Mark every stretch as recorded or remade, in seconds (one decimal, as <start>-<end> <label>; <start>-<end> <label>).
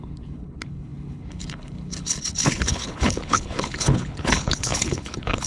0.0-5.5 remade